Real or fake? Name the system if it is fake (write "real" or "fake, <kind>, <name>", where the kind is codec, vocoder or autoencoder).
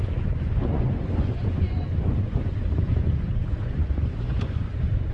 fake, vocoder, Vocos